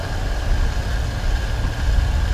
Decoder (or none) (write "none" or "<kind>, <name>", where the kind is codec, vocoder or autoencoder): none